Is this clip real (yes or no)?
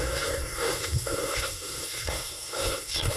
no